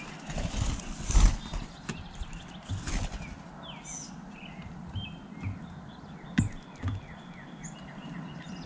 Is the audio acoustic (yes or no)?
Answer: yes